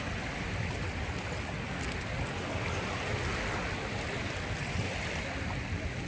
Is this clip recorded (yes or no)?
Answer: yes